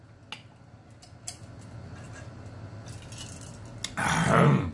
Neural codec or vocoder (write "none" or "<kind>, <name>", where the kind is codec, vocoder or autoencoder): none